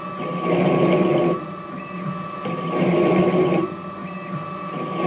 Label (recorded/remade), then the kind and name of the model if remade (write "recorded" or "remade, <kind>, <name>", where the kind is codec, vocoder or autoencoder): recorded